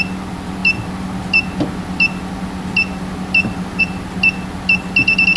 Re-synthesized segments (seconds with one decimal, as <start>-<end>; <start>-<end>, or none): none